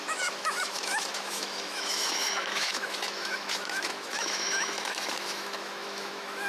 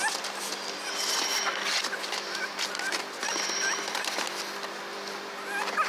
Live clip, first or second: second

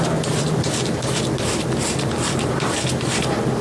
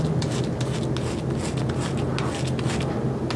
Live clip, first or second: second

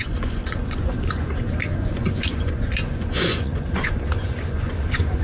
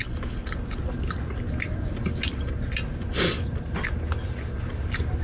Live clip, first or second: second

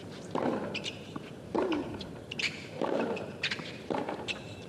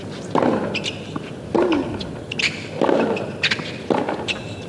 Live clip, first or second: second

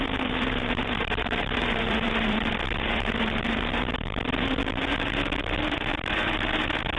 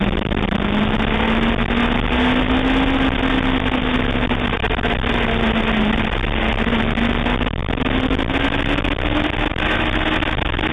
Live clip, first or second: second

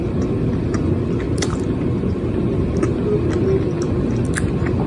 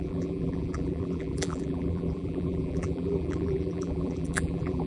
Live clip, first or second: first